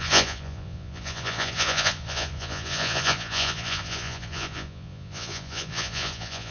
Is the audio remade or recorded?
remade